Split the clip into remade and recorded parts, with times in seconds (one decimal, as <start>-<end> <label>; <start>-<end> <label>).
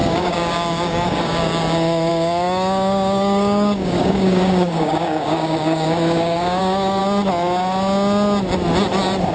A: 0.0-7.0 remade; 7.0-9.3 recorded